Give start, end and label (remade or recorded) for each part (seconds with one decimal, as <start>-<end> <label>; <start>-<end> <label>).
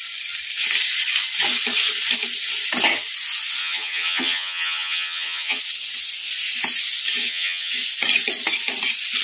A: 0.0-3.6 recorded; 3.6-5.6 remade; 5.6-7.2 recorded; 7.2-7.7 remade; 7.7-9.2 recorded